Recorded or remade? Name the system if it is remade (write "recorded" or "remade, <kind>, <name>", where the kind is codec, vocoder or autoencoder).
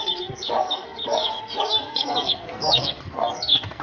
remade, codec, SNAC